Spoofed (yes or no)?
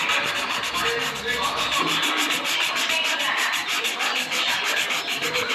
no